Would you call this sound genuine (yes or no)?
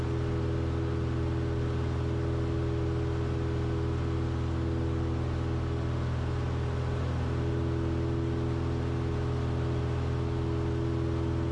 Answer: yes